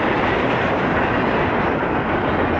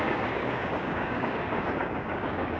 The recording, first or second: first